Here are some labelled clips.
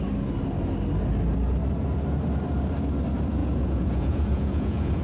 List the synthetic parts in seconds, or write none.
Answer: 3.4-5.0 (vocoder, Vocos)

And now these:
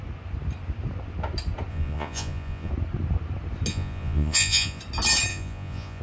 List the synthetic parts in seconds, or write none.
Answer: 1.7-2.7 (vocoder, Vocos); 3.7-4.8; 5.3-6.0

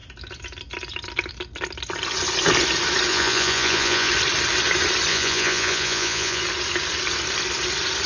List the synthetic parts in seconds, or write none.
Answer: 3.1-4.1 (vocoder, Vocos); 5.1-6.4